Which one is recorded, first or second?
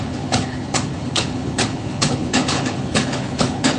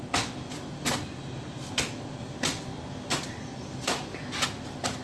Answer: second